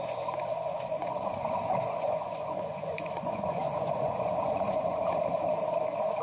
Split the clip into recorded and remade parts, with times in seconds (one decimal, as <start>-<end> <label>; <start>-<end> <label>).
0.0-5.0 remade; 5.0-6.2 recorded